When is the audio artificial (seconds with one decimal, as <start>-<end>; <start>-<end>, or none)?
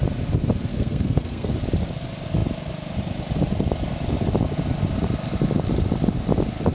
0.7-1.5